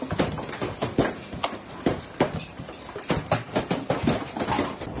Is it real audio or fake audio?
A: real